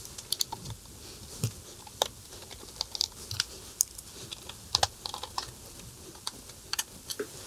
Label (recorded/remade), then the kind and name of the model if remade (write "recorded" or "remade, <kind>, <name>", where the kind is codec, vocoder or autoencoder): recorded